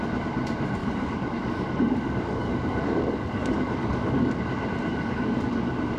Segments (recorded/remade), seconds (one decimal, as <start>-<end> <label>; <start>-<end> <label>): 0.0-0.8 recorded; 0.8-4.4 remade; 4.4-4.9 recorded; 4.9-6.0 remade

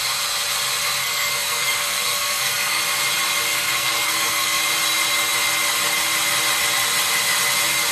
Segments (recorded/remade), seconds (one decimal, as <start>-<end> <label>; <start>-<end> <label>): 0.0-1.0 recorded; 1.0-2.8 remade; 2.8-3.5 recorded; 3.5-4.6 remade; 4.6-7.9 recorded

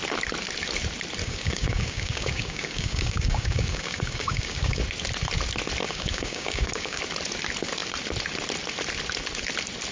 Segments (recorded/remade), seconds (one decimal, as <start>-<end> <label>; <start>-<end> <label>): 0.0-1.2 recorded; 1.2-4.8 remade; 4.8-5.8 recorded; 5.8-7.0 remade; 7.0-9.9 recorded

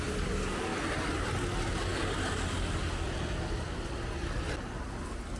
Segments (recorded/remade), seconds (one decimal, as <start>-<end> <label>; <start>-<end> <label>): 0.0-5.4 recorded